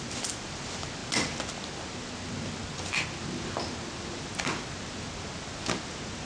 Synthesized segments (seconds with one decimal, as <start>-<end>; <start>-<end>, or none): none